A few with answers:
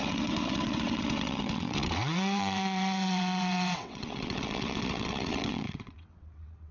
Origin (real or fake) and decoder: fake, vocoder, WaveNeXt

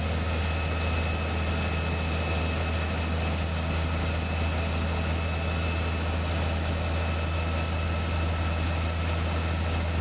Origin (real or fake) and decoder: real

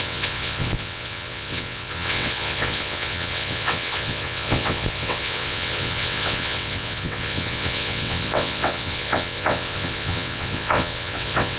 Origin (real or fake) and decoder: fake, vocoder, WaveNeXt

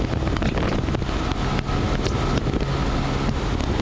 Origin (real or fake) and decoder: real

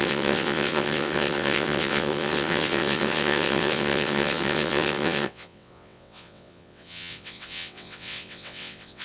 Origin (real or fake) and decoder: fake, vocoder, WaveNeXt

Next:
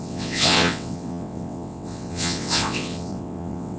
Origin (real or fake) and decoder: fake, vocoder, WaveNeXt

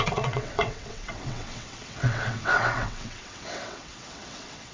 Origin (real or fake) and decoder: fake, vocoder, WaveNeXt